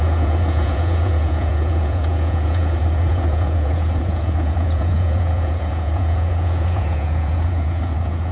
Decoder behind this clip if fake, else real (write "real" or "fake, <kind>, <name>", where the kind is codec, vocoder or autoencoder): fake, vocoder, Vocos